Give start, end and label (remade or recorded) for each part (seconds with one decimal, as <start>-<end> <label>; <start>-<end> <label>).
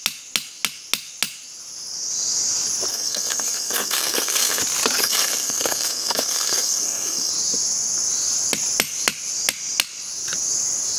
0.0-2.9 recorded; 2.9-4.6 remade; 4.6-5.0 recorded; 5.0-7.3 remade; 7.3-11.0 recorded